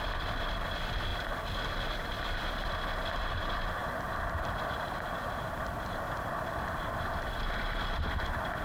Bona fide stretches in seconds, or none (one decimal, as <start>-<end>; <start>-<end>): 0.0-3.8; 7.8-8.6